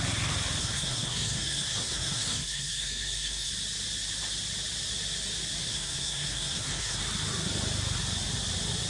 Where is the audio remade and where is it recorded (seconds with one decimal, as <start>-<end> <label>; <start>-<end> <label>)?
0.0-0.6 recorded; 0.6-3.5 remade; 3.5-5.7 recorded; 5.7-7.0 remade; 7.0-8.9 recorded